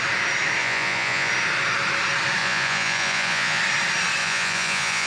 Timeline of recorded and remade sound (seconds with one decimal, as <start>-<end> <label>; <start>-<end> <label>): 0.0-0.6 recorded; 0.6-1.3 remade; 1.3-2.4 recorded; 2.4-3.6 remade; 3.6-4.2 recorded; 4.2-5.1 remade